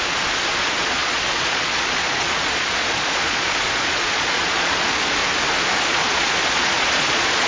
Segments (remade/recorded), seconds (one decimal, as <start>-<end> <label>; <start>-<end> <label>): 0.0-5.2 remade; 5.2-5.8 recorded; 5.8-7.5 remade